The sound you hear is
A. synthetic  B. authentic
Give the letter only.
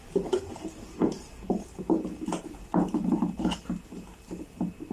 B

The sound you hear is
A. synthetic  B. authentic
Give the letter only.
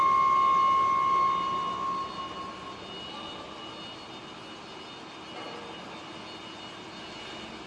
B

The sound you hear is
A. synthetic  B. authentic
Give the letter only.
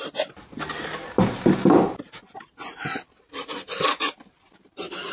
B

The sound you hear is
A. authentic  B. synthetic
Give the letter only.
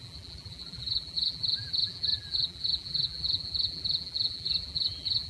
B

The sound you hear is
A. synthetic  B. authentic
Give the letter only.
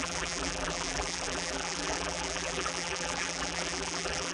A